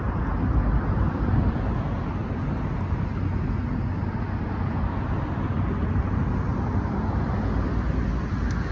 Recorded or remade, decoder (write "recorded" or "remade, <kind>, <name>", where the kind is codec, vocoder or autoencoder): recorded